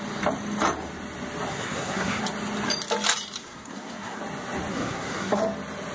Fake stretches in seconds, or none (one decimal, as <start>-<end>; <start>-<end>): 1.5-2.2; 3.4-4.2; 4.7-5.4